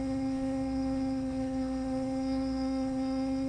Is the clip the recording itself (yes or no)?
no